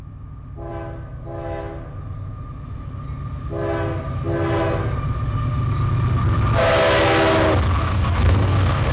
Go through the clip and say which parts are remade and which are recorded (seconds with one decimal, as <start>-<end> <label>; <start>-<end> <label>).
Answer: 0.0-7.8 recorded; 7.8-8.9 remade